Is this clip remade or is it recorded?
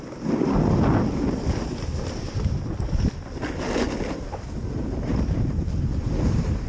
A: recorded